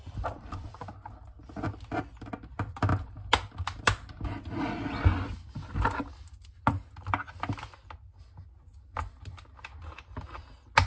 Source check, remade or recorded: recorded